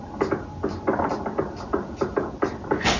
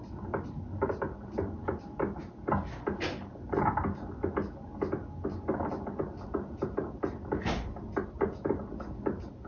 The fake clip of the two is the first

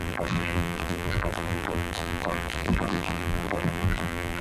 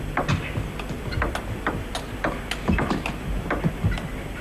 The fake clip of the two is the first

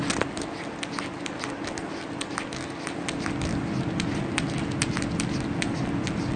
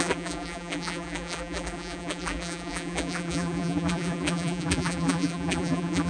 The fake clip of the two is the second